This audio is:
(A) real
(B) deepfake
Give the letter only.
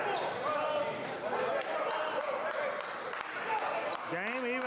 A